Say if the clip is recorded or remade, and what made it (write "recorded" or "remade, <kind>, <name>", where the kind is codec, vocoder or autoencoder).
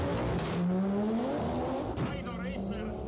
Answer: recorded